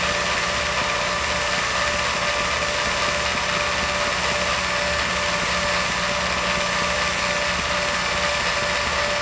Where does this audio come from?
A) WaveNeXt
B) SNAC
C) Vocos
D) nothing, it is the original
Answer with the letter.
D